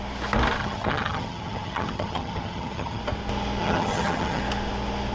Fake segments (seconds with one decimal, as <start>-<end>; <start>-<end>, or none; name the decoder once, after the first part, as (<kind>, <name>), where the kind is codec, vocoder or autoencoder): 0.6-3.0 (vocoder, HiFi-GAN); 3.6-4.4